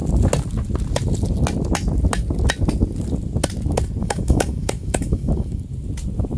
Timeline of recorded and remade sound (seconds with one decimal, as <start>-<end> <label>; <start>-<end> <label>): 0.0-4.0 recorded; 4.0-5.6 remade; 5.6-6.4 recorded